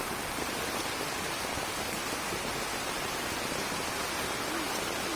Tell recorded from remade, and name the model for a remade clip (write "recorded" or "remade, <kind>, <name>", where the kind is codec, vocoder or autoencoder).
recorded